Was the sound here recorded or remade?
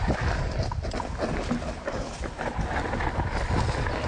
recorded